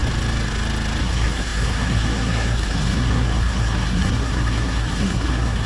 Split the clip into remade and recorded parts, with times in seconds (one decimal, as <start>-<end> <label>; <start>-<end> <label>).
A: 0.0-1.0 recorded; 1.0-5.7 remade